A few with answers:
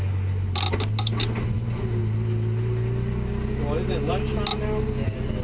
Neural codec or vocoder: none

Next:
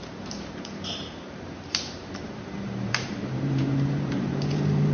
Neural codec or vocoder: vocoder, BigVGAN v2